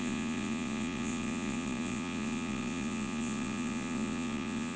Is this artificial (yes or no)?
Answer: yes